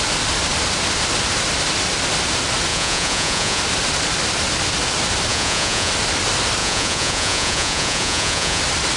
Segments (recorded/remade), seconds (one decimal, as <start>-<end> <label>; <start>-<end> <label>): 0.0-2.7 recorded; 2.7-3.6 remade; 3.6-5.3 recorded; 5.3-5.9 remade; 5.9-6.6 recorded; 6.6-8.6 remade; 8.6-9.0 recorded